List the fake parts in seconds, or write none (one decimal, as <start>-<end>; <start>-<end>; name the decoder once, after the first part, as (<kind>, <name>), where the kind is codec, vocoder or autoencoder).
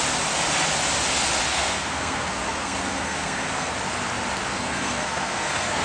1.5-3.7 (codec, SNAC); 4.5-5.8